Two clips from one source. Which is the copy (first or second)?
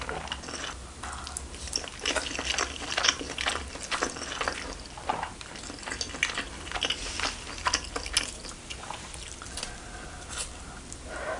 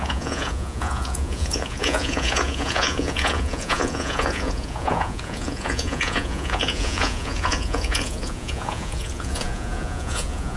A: second